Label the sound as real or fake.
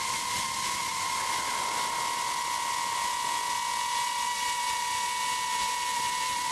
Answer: real